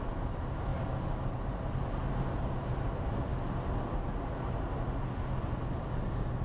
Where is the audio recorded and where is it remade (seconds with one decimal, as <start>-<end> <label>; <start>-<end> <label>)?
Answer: 0.0-6.4 recorded

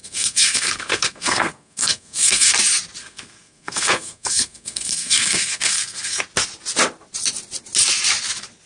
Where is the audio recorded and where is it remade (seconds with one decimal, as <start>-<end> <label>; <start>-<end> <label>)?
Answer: 0.0-2.5 remade; 2.5-3.0 recorded; 3.0-6.2 remade; 6.2-8.7 recorded

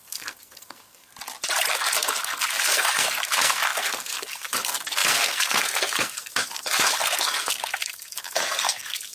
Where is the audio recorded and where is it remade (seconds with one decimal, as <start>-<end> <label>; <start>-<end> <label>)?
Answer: 0.0-1.1 remade; 1.1-1.7 recorded; 1.7-9.1 remade

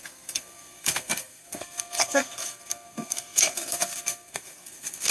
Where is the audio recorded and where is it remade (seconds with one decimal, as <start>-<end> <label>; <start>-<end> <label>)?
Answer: 0.0-5.1 remade

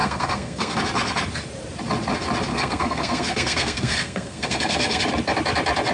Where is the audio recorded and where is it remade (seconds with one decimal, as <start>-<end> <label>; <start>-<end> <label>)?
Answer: 0.0-0.8 remade; 0.8-2.5 recorded; 2.5-5.0 remade; 5.0-5.9 recorded

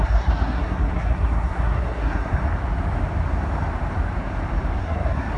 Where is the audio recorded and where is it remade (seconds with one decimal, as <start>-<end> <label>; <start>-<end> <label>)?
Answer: 0.0-2.4 remade; 2.4-4.8 recorded; 4.8-5.4 remade

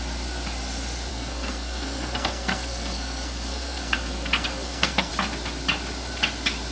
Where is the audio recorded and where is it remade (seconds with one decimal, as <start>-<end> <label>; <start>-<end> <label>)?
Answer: 0.0-1.1 recorded; 1.1-5.1 remade; 5.1-6.7 recorded